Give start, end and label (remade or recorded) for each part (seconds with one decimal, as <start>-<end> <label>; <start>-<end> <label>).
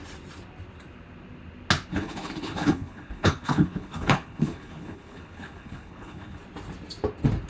0.0-1.9 recorded; 1.9-6.4 remade; 6.4-7.5 recorded